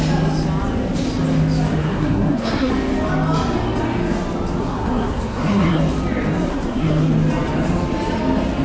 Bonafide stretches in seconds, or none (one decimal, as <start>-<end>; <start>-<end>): 0.0-1.8; 2.7-4.6; 5.8-6.5; 7.0-8.6